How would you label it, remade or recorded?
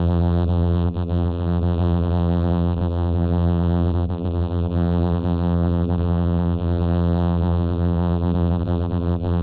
remade